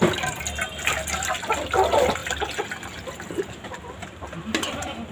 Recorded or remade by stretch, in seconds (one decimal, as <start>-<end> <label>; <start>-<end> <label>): 0.0-5.1 recorded